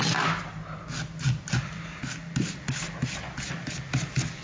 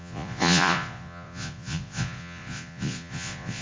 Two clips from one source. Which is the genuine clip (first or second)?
first